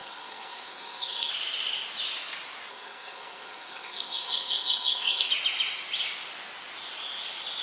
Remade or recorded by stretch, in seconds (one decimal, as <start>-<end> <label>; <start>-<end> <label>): 0.0-1.3 remade; 1.3-2.7 recorded; 2.7-5.3 remade; 5.3-7.6 recorded